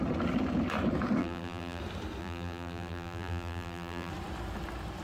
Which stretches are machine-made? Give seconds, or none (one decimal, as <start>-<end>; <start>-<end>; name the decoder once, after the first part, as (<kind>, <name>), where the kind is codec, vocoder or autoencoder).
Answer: 1.2-1.8 (vocoder, BigVGAN v2); 2.2-4.1